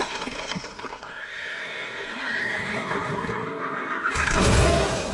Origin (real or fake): fake